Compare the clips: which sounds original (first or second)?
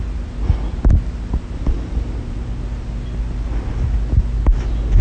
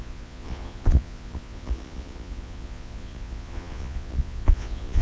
first